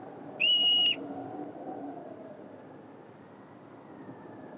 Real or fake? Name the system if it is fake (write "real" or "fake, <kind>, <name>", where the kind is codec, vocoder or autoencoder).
real